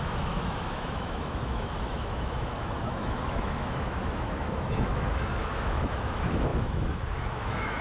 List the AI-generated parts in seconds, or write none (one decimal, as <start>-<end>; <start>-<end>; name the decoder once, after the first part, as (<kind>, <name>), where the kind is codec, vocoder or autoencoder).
0.0-7.8 (autoencoder, DAC-VAE)